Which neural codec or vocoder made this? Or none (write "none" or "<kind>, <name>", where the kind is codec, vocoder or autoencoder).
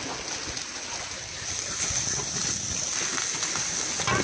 none